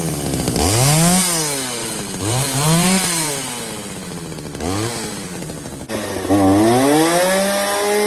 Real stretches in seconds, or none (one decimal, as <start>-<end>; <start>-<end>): 0.0-1.8; 3.3-5.1; 5.7-8.1